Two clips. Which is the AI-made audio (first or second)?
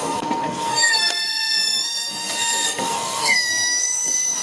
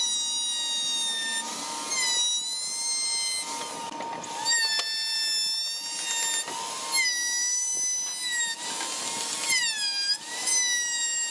first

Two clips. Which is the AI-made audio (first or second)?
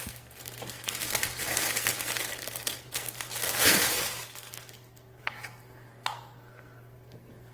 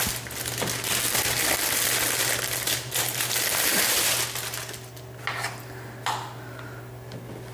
first